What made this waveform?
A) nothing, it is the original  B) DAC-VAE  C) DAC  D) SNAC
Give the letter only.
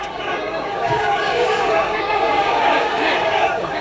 C